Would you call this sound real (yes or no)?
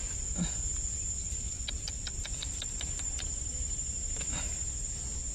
yes